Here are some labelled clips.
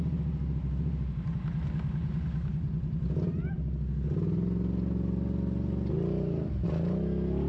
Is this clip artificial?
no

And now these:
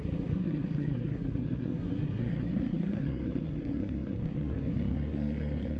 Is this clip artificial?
yes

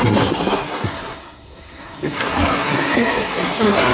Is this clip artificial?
yes